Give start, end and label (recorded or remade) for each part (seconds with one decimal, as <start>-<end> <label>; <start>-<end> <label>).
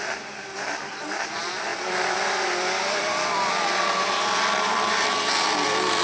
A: 0.0-6.0 remade